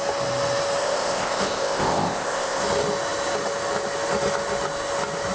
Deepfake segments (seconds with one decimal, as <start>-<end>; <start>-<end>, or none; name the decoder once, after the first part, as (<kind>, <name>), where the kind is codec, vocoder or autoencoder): 0.8-2.6 (codec, ZipCodec)